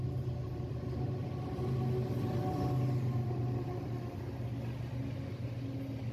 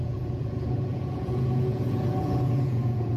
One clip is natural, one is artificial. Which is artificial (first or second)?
second